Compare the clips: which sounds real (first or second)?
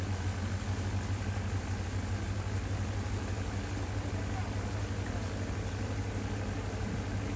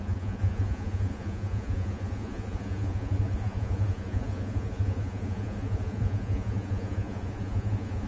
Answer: first